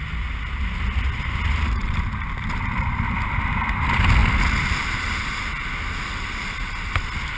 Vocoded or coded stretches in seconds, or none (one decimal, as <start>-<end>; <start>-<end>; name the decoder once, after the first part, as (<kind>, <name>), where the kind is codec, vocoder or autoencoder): none